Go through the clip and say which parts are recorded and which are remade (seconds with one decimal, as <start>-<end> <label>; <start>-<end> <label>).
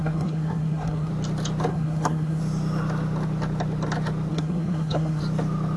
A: 0.0-1.1 remade; 1.1-1.7 recorded; 1.7-2.4 remade; 2.4-4.3 recorded; 4.3-5.2 remade; 5.2-5.8 recorded